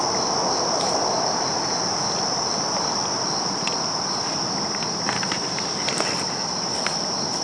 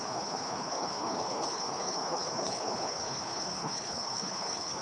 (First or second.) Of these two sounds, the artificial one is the second